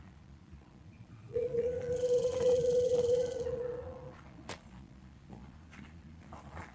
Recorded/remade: remade